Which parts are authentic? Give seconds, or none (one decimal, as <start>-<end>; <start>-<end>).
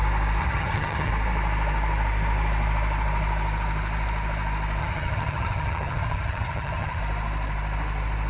0.0-0.4; 1.1-4.8; 7.0-8.3